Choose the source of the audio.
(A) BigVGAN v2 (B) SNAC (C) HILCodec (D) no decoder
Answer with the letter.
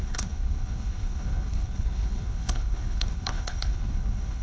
C